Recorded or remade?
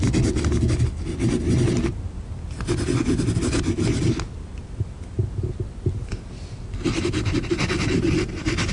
recorded